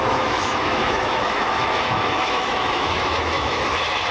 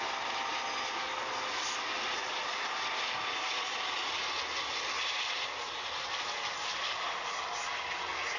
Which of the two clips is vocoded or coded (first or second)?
first